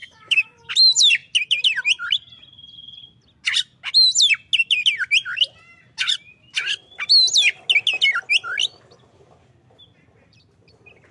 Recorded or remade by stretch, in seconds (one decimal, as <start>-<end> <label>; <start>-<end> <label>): 0.0-0.7 remade; 0.7-11.1 recorded